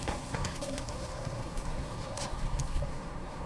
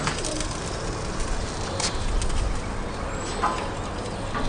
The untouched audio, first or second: second